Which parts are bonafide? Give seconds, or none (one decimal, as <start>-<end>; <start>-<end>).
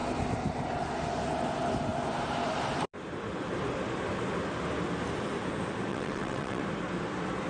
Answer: 0.0-5.9; 6.6-7.5